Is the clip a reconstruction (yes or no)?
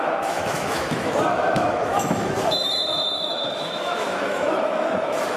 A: yes